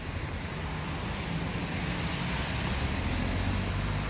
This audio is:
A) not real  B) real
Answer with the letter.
B